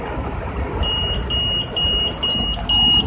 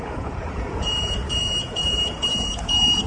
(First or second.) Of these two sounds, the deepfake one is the second